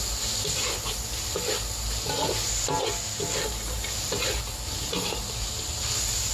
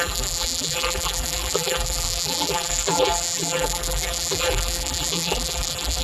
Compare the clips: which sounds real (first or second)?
first